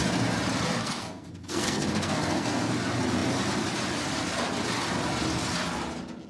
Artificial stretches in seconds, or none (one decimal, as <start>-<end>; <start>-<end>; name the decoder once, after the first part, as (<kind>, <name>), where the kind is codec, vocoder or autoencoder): 0.8-2.7 (codec, SNAC)